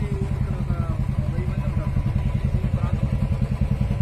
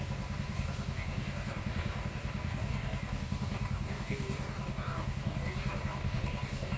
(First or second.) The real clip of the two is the first